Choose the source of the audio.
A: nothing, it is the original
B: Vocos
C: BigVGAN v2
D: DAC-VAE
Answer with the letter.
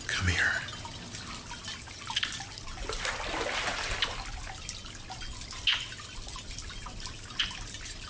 A